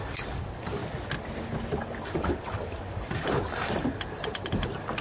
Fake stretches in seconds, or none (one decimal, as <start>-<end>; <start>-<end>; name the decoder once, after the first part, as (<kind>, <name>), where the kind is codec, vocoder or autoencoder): 0.0-0.8 (vocoder, BigVGAN v2); 1.8-5.0